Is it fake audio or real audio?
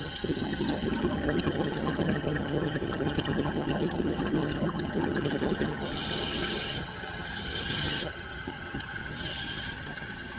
fake